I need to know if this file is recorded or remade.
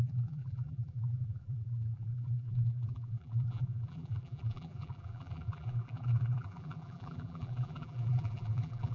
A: remade